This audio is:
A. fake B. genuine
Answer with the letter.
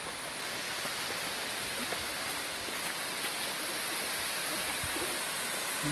B